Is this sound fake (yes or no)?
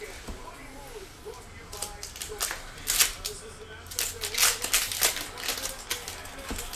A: no